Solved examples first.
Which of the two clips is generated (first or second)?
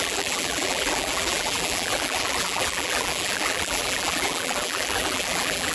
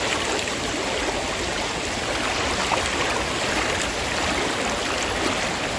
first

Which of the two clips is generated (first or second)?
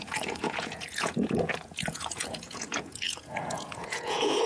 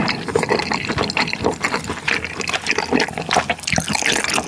first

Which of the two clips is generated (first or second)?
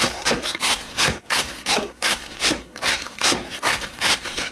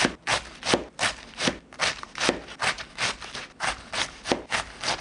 first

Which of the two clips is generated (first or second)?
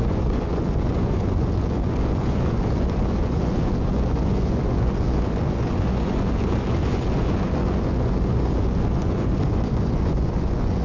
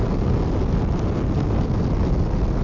first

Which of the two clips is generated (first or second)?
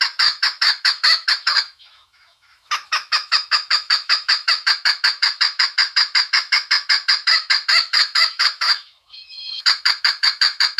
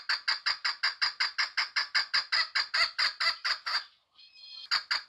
first